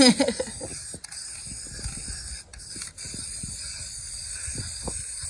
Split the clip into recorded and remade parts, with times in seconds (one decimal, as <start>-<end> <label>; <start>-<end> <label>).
0.0-0.7 recorded; 0.7-1.3 remade; 1.3-4.5 recorded; 4.5-5.3 remade